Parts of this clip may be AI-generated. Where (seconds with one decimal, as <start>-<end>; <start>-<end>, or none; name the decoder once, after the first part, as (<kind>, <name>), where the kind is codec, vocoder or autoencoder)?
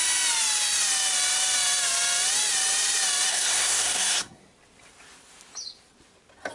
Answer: 3.3-4.4 (codec, SNAC)